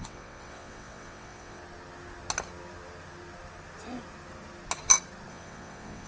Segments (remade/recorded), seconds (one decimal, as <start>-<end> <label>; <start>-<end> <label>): 0.0-1.6 remade; 1.6-5.3 recorded; 5.3-6.1 remade